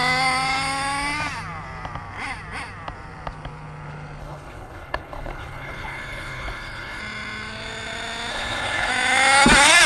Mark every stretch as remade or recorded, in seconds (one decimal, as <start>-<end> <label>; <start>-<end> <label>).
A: 0.0-4.2 recorded; 4.2-7.0 remade; 7.0-8.3 recorded; 8.3-8.9 remade; 8.9-9.9 recorded